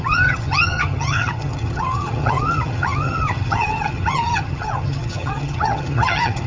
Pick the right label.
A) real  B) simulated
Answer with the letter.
B